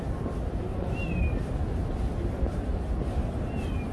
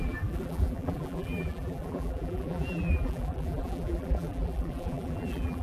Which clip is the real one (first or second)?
first